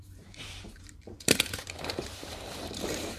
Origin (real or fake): fake